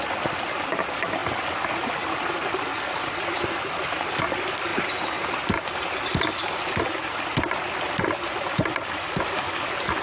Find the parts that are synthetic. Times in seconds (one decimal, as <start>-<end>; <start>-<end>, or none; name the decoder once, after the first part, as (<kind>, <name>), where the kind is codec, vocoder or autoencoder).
4.7-5.4 (vocoder, BigVGAN v2)